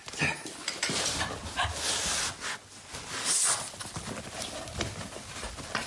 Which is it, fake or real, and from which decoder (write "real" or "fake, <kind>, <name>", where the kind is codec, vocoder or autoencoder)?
real